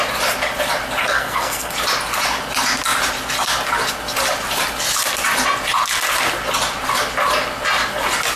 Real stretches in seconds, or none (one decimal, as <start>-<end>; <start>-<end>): 0.0-1.0; 1.7-8.4